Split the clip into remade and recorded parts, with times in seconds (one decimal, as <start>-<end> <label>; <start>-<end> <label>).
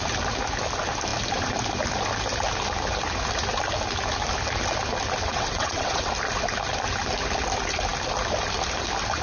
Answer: 0.0-5.3 recorded; 5.3-6.1 remade; 6.1-9.2 recorded